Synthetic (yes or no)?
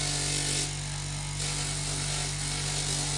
no